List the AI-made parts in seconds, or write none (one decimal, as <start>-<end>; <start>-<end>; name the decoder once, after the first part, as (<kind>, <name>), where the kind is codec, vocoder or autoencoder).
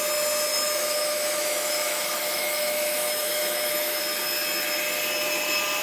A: 0.5-4.0 (autoencoder, DAC-VAE)